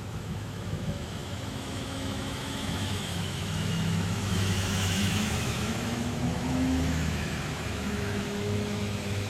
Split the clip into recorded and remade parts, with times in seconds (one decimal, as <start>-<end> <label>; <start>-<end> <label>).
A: 0.0-9.3 remade